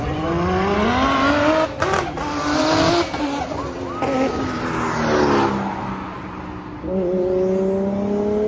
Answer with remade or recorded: recorded